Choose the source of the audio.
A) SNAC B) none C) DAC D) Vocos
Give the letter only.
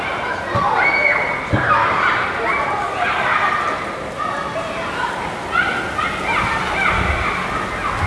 B